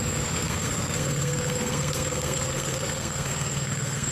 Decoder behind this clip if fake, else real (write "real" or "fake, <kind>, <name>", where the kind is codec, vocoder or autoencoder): fake, codec, SNAC